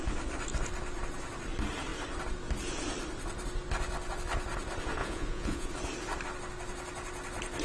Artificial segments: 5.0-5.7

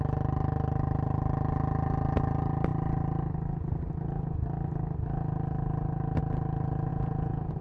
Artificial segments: 6.9-7.6

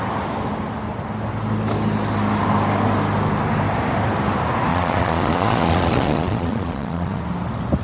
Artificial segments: 4.7-7.2

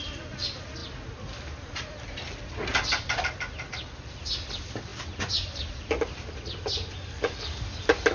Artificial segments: none

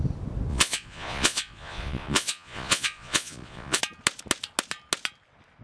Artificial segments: 0.5-3.8

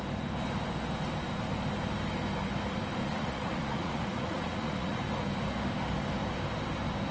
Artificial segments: 3.0-5.0